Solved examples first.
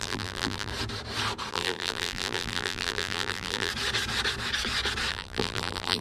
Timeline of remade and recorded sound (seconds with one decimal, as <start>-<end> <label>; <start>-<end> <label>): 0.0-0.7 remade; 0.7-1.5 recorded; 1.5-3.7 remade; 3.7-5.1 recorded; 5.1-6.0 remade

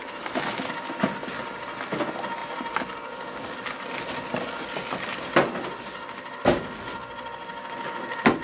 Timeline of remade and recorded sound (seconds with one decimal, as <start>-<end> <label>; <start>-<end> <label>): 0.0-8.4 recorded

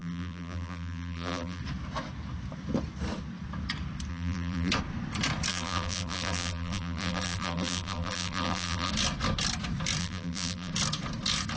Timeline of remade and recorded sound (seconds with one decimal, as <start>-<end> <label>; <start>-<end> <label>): 0.0-1.6 remade; 1.6-4.1 recorded; 4.1-4.7 remade; 4.7-5.5 recorded; 5.5-8.9 remade; 8.9-10.0 recorded; 10.0-10.7 remade; 10.7-11.6 recorded